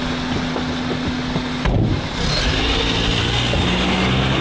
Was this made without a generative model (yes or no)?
yes